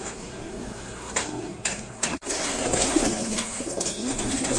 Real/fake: fake